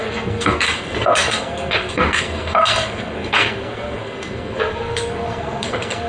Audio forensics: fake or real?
fake